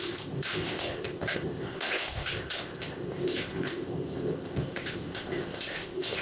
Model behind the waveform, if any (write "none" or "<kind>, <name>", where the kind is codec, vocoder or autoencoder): codec, ZipCodec